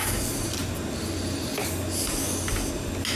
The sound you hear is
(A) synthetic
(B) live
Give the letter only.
B